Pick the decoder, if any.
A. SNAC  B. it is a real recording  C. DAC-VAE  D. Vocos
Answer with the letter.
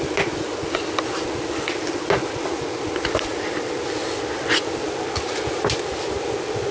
B